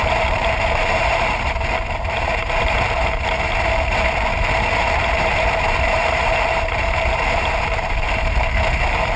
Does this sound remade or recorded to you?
remade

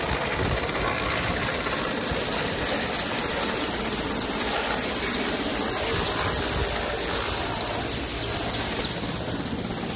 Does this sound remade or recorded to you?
recorded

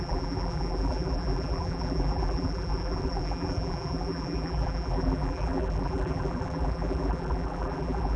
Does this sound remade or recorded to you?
remade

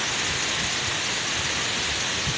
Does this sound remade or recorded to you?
recorded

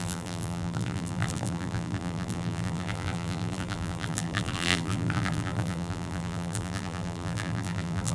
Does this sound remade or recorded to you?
remade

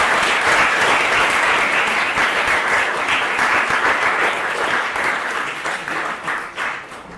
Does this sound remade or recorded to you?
recorded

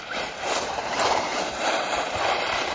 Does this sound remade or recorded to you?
remade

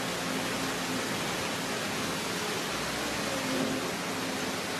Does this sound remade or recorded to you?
recorded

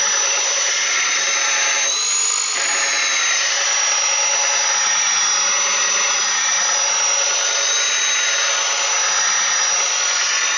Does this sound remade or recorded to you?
recorded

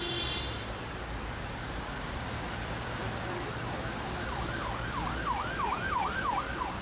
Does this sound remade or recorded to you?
remade